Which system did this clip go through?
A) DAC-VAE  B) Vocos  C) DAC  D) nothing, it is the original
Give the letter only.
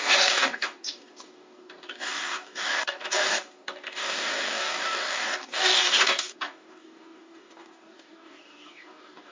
C